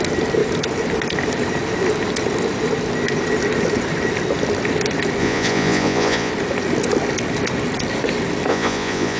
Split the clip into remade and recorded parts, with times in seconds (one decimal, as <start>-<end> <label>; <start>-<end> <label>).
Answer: 0.0-5.2 recorded; 5.2-6.3 remade; 6.3-8.5 recorded; 8.5-9.2 remade